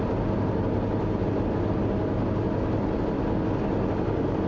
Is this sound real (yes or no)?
yes